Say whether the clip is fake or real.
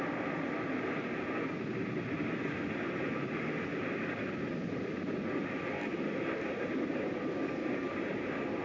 real